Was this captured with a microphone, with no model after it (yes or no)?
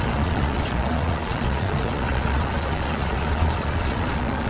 no